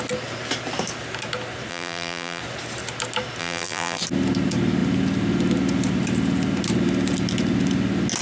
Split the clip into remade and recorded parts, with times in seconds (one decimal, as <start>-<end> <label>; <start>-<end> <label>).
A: 0.0-1.7 recorded; 1.7-2.4 remade; 2.4-3.4 recorded; 3.4-4.0 remade; 4.0-8.2 recorded